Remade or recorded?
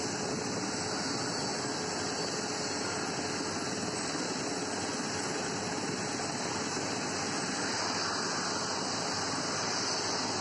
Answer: recorded